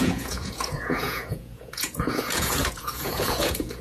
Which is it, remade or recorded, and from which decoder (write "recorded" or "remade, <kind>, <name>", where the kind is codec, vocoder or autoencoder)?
remade, vocoder, Vocos